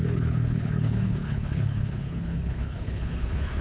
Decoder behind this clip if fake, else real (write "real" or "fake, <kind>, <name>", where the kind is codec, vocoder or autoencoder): fake, codec, HILCodec